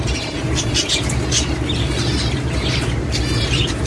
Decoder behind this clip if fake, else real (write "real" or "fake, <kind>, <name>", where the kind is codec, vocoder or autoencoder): fake, vocoder, BigVGAN v2